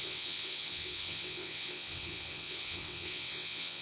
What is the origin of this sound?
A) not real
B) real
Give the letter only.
A